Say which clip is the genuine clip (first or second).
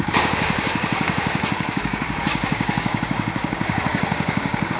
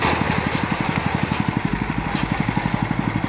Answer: second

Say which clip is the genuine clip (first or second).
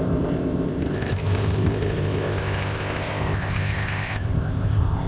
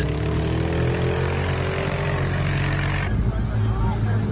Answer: second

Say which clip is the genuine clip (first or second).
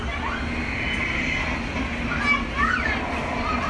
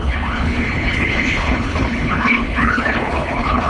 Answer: first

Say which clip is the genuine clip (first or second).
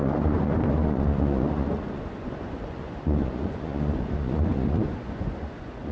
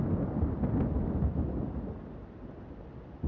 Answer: second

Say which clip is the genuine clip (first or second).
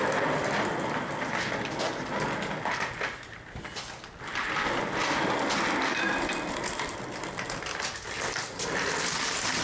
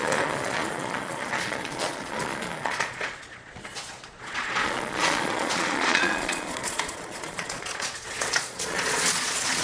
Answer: first